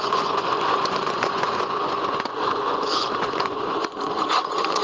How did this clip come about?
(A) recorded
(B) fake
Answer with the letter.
B